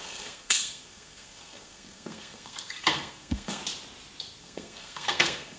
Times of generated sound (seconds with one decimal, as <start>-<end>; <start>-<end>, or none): 0.0-3.6; 4.4-5.6